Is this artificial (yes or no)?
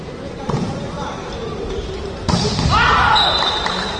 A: yes